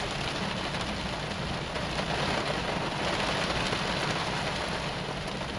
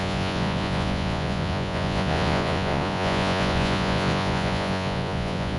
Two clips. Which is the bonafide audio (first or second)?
first